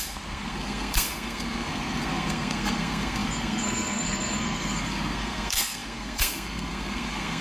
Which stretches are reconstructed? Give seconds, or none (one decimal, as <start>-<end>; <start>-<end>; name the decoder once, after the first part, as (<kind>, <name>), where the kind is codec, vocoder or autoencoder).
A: 0.0-7.4 (codec, SNAC)